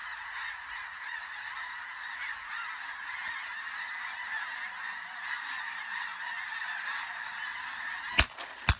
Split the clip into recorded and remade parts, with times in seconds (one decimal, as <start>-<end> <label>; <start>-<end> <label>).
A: 0.0-1.5 remade; 1.5-8.8 recorded